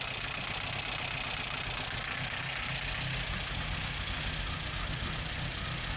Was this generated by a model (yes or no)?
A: no